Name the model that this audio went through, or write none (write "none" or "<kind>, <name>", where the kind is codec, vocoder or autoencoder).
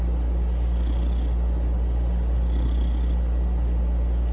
none